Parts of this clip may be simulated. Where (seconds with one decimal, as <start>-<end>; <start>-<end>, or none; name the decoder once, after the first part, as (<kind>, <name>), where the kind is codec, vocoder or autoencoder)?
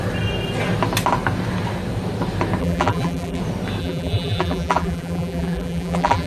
2.6-3.4 (vocoder, BigVGAN v2); 3.8-6.3